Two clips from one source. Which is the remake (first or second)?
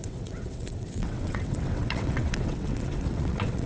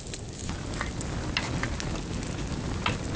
first